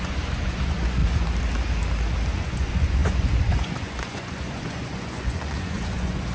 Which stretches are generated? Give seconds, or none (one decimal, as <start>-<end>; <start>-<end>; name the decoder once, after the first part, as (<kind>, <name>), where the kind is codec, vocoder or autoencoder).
0.0-1.0 (vocoder, Vocos); 2.4-6.3